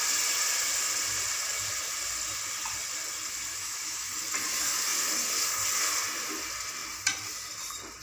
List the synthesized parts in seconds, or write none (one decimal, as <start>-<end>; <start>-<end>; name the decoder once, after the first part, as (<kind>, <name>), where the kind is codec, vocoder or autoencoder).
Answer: 3.5-4.1 (autoencoder, DAC-VAE)